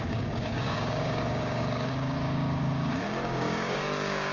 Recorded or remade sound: remade